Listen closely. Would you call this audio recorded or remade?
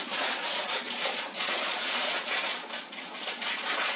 remade